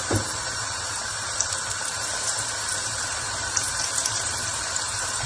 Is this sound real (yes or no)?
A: no